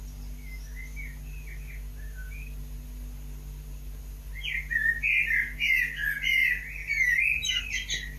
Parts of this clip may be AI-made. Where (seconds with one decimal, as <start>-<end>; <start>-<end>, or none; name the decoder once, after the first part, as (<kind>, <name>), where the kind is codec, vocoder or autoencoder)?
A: none